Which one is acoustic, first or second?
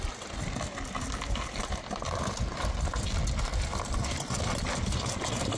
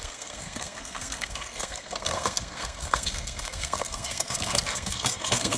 first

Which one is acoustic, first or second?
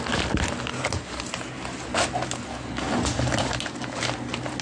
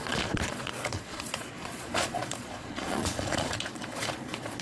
first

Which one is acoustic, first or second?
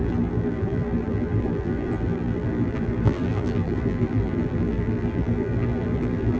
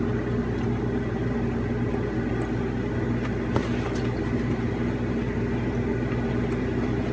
second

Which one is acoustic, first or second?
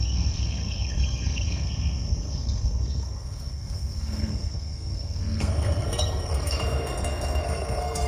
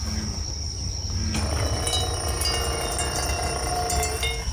second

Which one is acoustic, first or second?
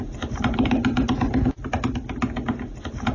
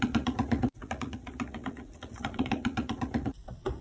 first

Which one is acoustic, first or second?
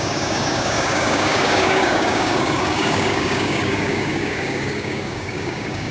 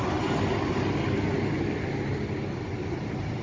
second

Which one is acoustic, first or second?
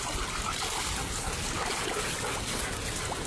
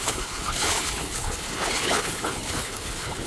first